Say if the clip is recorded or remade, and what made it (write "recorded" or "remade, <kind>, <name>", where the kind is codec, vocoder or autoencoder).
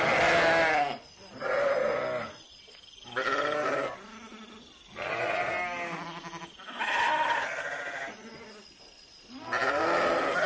recorded